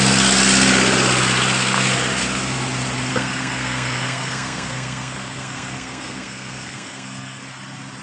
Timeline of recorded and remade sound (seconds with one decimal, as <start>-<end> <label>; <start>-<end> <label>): 0.0-3.1 recorded; 3.1-7.4 remade; 7.4-8.0 recorded

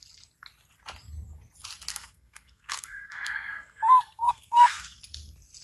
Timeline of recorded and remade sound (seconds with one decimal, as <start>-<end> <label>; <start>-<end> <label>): 0.0-1.9 recorded; 1.9-5.0 remade; 5.0-5.6 recorded

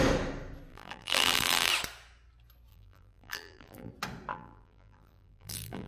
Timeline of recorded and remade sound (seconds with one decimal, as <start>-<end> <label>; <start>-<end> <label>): 0.0-0.7 recorded; 0.7-1.7 remade; 1.7-2.7 recorded; 2.7-3.9 remade; 3.9-4.3 recorded; 4.3-5.9 remade

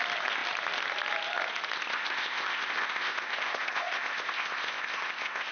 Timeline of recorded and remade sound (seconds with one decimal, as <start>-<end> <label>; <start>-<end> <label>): 0.0-1.9 recorded; 1.9-5.5 remade

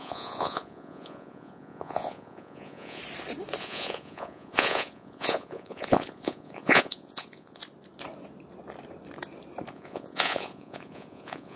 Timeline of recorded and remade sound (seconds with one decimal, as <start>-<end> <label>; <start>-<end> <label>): 0.0-3.0 remade; 3.0-3.6 recorded; 3.6-7.6 remade; 7.6-9.7 recorded; 9.7-11.6 remade